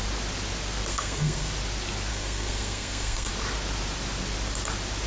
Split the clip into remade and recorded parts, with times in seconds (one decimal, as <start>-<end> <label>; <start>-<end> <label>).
0.0-0.9 recorded; 0.9-1.5 remade; 1.5-2.1 recorded; 2.1-3.3 remade; 3.3-5.1 recorded

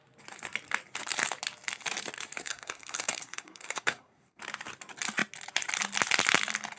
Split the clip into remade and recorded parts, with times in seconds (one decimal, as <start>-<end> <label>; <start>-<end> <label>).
0.0-2.4 recorded; 2.4-4.4 remade; 4.4-6.8 recorded

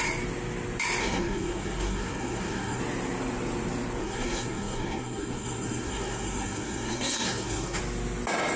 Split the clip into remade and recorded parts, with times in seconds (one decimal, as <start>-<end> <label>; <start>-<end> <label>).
0.0-1.0 recorded; 1.0-2.8 remade; 2.8-4.0 recorded; 4.0-7.8 remade; 7.8-8.6 recorded